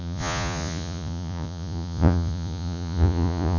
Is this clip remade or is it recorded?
remade